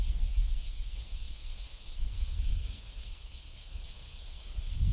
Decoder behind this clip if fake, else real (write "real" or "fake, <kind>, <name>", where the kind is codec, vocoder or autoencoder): fake, codec, SNAC